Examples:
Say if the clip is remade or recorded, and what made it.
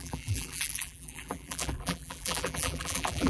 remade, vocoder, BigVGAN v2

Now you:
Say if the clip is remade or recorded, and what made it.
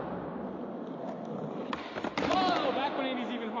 recorded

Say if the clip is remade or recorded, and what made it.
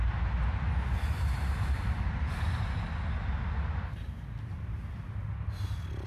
recorded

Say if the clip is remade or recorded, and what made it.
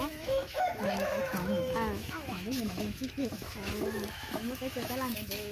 remade, autoencoder, DAC-VAE